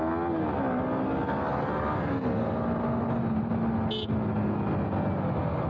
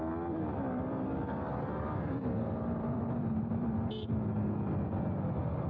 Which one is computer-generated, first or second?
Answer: second